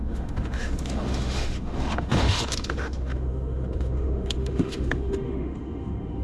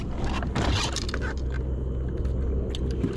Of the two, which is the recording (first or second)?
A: second